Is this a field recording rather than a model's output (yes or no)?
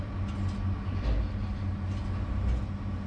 yes